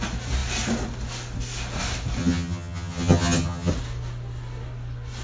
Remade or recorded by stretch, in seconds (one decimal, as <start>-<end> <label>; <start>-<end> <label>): 0.0-2.2 recorded; 2.2-3.7 remade; 3.7-5.2 recorded